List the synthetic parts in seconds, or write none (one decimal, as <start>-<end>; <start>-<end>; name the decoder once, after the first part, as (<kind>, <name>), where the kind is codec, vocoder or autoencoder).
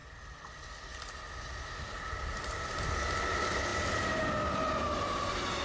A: none